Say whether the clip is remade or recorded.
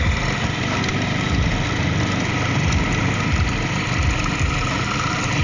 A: recorded